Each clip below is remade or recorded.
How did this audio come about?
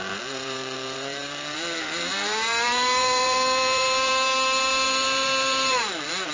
remade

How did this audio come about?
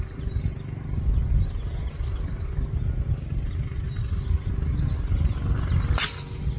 recorded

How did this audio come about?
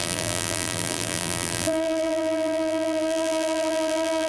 remade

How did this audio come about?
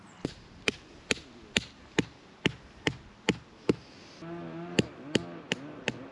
recorded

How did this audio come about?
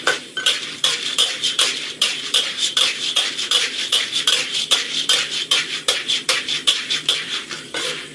remade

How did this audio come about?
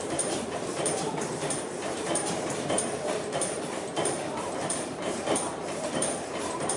remade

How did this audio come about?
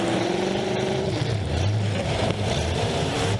remade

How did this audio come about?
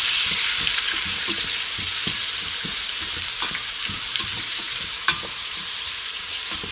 remade